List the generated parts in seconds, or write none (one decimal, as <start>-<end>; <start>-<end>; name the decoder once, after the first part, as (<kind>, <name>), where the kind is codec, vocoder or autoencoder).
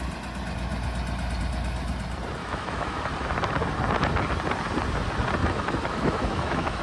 2.4-3.0 (autoencoder, DAC-VAE); 5.4-6.8